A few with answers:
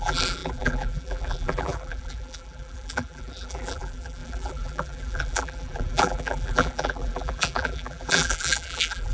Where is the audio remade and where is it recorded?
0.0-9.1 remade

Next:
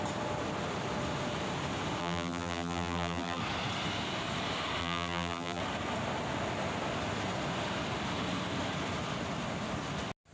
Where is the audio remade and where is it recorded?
0.0-2.0 recorded; 2.0-3.4 remade; 3.4-4.8 recorded; 4.8-5.6 remade; 5.6-10.3 recorded

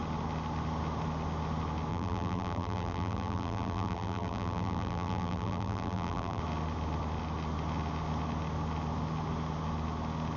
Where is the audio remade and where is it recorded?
0.0-1.9 recorded; 1.9-6.4 remade; 6.4-10.4 recorded

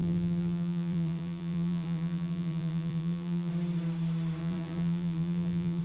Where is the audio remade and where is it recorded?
0.0-3.5 remade; 3.5-4.4 recorded; 4.4-5.8 remade

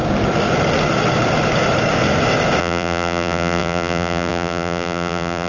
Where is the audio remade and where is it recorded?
0.0-2.6 recorded; 2.6-5.5 remade

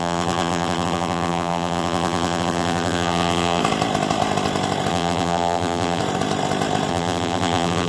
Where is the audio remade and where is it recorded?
0.0-3.6 remade; 3.6-4.9 recorded; 4.9-6.0 remade; 6.0-6.9 recorded; 6.9-7.9 remade

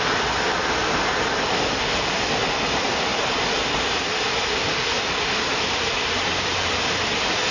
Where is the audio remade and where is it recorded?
0.0-0.8 recorded; 0.8-1.7 remade; 1.7-4.6 recorded; 4.6-7.0 remade; 7.0-7.5 recorded